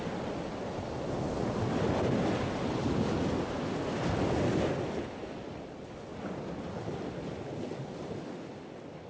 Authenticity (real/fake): real